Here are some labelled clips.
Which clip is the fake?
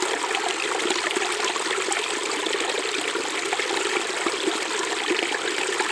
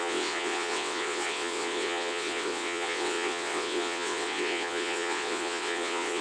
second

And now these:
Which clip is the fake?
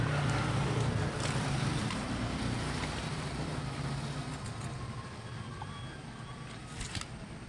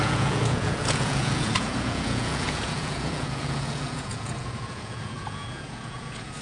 second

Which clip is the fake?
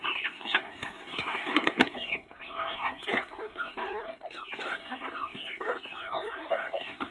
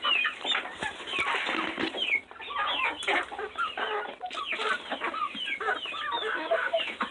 first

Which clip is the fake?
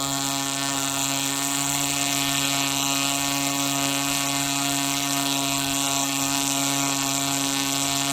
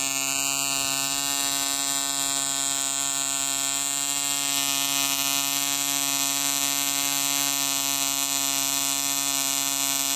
first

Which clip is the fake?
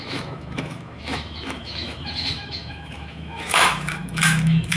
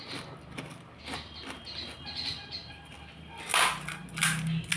first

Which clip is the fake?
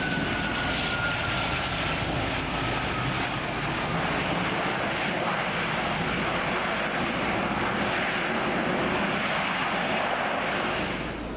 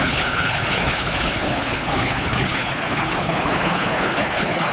second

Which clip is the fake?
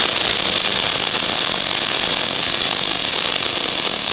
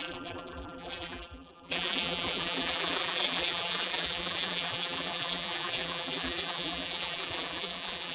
second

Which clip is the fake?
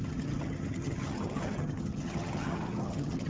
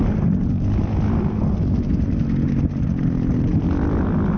first